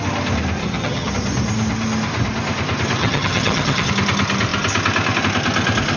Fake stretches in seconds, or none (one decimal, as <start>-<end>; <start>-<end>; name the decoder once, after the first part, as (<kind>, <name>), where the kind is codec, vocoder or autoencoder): 0.6-1.1 (vocoder, HiFi-GAN); 3.0-3.9